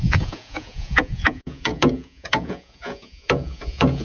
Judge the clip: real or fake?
fake